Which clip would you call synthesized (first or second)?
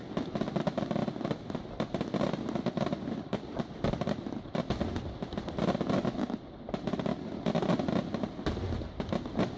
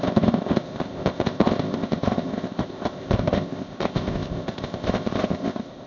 second